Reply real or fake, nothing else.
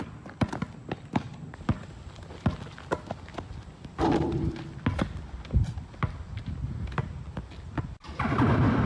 real